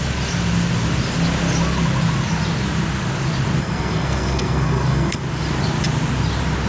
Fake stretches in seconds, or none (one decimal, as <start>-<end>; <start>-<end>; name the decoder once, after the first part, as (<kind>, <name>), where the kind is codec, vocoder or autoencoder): 3.6-5.2 (codec, SNAC)